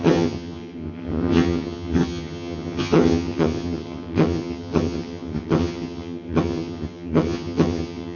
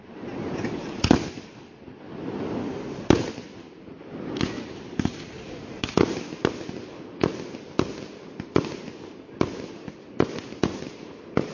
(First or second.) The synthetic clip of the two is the first